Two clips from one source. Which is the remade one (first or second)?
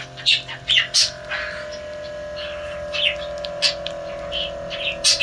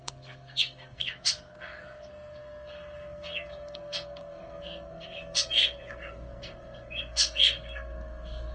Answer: second